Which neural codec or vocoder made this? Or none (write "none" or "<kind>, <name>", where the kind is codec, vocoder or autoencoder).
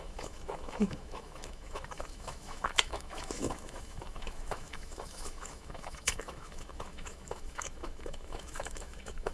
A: autoencoder, DAC-VAE